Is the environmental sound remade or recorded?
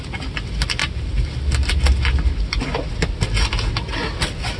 recorded